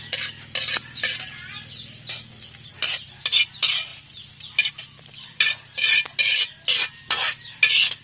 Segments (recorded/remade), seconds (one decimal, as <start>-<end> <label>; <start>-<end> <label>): 0.0-8.0 recorded